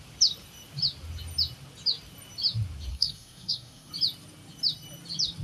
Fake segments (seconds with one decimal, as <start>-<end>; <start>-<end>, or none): 2.9-3.9